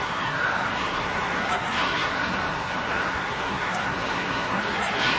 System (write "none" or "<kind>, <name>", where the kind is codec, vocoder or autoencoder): codec, SNAC